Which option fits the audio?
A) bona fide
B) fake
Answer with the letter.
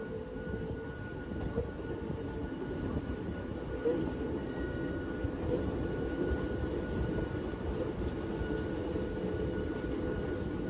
A